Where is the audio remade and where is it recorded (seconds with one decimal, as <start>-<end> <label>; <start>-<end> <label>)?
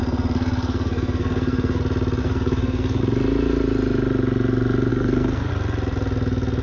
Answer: 0.0-1.8 remade; 1.8-2.2 recorded; 2.2-3.0 remade; 3.0-4.9 recorded; 4.9-5.5 remade; 5.5-6.6 recorded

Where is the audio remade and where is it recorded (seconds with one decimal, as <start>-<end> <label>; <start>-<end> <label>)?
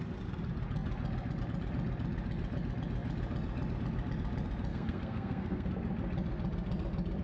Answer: 0.0-4.7 recorded; 4.7-5.7 remade; 5.7-7.2 recorded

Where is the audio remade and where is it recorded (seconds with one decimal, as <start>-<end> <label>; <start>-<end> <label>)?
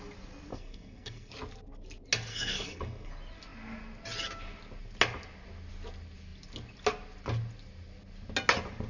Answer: 0.0-0.5 recorded; 0.5-1.3 remade; 1.3-2.3 recorded; 2.3-3.1 remade; 3.1-8.9 recorded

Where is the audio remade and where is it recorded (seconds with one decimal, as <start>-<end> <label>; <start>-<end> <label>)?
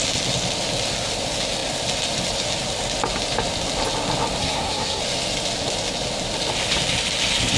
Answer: 0.0-4.4 recorded; 4.4-5.0 remade; 5.0-7.6 recorded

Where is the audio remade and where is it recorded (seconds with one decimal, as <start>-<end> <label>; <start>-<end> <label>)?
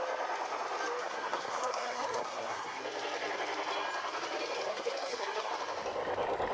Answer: 0.0-1.0 recorded; 1.0-2.8 remade; 2.8-4.7 recorded; 4.7-5.5 remade; 5.5-6.5 recorded